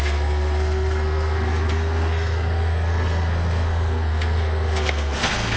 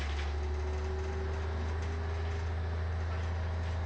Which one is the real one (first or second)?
second